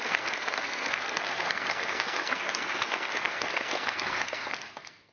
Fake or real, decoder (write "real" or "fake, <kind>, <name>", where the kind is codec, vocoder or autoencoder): fake, codec, SNAC